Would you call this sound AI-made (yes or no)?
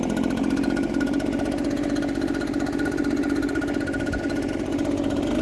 no